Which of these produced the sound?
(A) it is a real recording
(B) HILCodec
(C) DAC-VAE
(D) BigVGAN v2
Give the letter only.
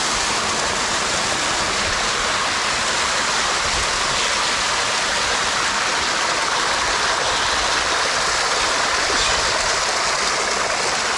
A